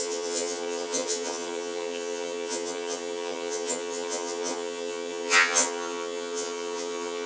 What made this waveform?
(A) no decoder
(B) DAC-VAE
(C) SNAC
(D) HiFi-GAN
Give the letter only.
D